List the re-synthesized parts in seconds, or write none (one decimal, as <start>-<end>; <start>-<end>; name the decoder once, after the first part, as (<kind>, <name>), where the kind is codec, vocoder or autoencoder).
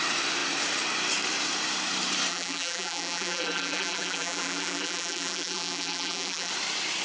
2.3-6.5 (vocoder, BigVGAN v2)